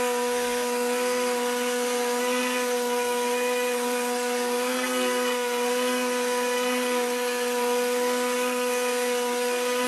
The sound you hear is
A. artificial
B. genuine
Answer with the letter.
A